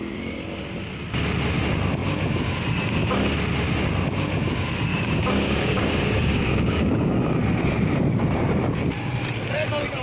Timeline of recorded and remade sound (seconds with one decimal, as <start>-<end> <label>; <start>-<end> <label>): 0.0-4.9 recorded; 4.9-7.2 remade; 7.2-10.0 recorded